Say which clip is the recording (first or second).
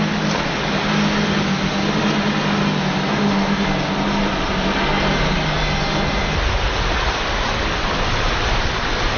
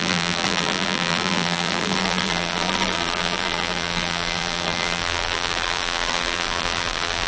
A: first